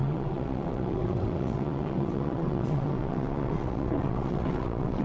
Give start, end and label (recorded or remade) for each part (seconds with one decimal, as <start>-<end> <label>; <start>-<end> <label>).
0.0-5.0 remade